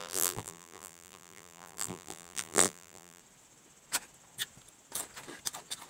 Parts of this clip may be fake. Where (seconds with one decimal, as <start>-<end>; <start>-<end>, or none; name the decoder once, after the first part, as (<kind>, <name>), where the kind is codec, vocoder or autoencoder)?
0.0-3.2 (vocoder, BigVGAN v2)